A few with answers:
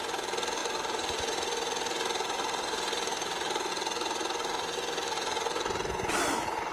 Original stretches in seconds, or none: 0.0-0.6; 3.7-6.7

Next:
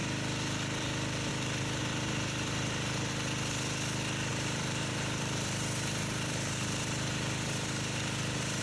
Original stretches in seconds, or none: 0.0-1.8; 3.1-4.3

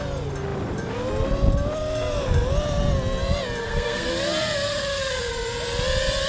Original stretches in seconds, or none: 0.0-3.6; 4.1-4.7; 5.3-6.3

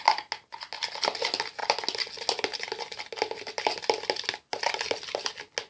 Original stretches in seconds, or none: 0.0-5.7